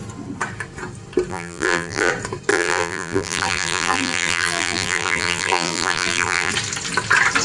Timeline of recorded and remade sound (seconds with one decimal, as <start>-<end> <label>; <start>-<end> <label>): 0.0-1.3 recorded; 1.3-2.1 remade; 2.1-2.5 recorded; 2.5-6.5 remade; 6.5-7.4 recorded